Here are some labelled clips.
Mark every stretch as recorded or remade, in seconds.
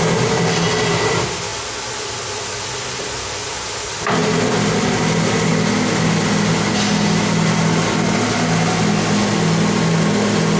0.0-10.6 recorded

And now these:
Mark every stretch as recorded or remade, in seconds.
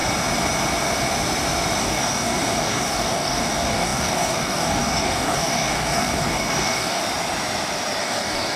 0.0-1.8 recorded; 1.8-7.0 remade; 7.0-8.0 recorded; 8.0-8.6 remade